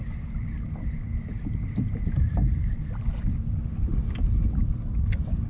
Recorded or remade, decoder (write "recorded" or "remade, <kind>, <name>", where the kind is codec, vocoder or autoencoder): recorded